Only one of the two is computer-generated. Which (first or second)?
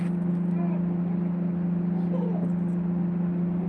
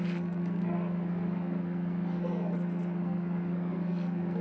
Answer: second